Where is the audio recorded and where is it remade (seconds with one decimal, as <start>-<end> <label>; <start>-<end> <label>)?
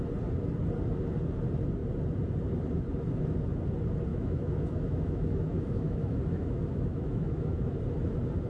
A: 0.0-4.1 recorded; 4.1-7.8 remade; 7.8-8.5 recorded